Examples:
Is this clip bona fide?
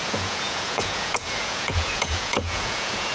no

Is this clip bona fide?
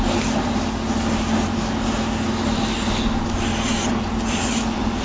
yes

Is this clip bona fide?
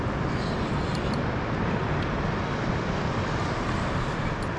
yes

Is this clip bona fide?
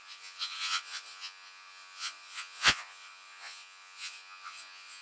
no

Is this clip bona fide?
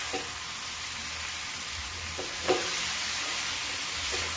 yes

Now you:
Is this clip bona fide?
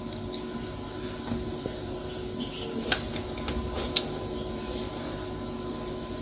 yes